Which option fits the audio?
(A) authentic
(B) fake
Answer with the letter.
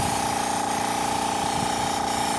A